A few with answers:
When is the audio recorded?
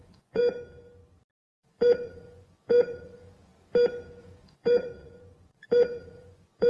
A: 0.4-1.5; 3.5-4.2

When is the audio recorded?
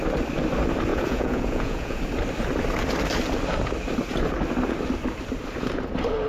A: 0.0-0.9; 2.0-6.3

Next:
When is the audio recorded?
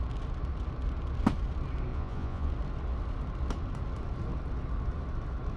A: 0.0-1.9; 2.5-5.6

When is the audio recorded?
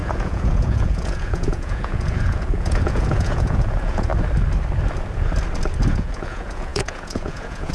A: 4.1-5.9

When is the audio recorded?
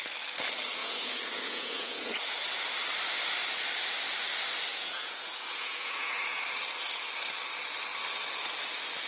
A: 0.0-0.8; 2.0-4.7; 6.4-9.1